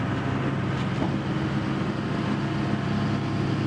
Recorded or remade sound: recorded